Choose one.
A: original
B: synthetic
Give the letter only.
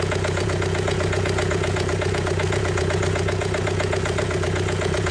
B